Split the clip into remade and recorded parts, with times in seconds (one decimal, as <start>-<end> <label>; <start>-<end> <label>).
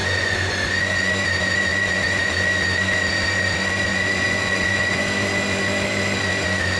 0.0-1.1 remade; 1.1-1.7 recorded; 1.7-2.3 remade; 2.3-3.9 recorded; 3.9-5.0 remade; 5.0-6.8 recorded